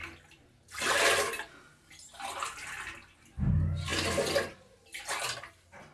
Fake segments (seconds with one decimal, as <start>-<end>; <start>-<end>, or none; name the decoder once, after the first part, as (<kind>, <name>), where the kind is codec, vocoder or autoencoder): none